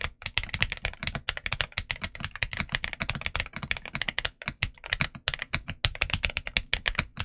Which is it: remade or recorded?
recorded